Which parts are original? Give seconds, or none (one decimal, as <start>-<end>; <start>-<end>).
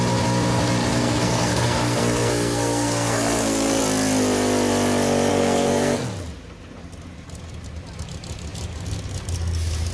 0.0-0.9; 3.8-5.3; 6.0-9.9